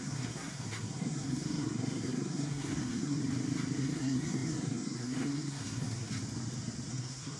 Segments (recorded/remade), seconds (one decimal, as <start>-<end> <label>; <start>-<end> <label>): 0.0-3.2 remade; 3.2-3.8 recorded; 3.8-6.2 remade; 6.2-6.9 recorded; 6.9-7.4 remade